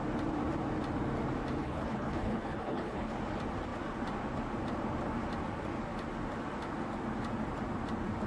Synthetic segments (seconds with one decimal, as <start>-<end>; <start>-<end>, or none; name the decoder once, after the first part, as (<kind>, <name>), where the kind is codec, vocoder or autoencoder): 1.6-3.1 (codec, HILCodec)

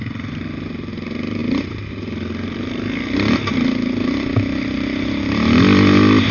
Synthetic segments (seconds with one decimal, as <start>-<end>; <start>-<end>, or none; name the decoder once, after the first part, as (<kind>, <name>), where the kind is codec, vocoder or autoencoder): none

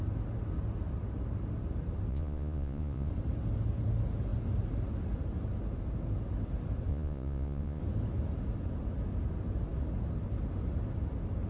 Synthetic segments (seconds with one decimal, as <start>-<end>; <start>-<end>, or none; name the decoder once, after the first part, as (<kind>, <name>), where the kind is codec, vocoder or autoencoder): 2.1-3.1 (vocoder, Vocos); 6.9-7.8

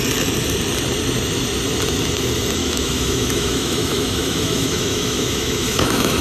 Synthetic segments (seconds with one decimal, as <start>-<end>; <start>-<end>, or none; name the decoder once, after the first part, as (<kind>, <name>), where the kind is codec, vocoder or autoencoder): 2.6-6.2 (autoencoder, DAC-VAE)

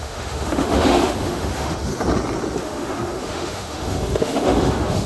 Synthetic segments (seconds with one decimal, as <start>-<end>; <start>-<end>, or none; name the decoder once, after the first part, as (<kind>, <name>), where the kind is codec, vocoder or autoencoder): 0.0-1.9 (autoencoder, DAC-VAE); 2.6-5.1

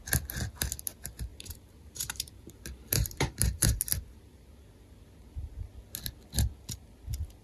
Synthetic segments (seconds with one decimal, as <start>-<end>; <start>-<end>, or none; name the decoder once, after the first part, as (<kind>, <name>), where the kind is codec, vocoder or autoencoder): 1.3-3.8 (vocoder, BigVGAN v2)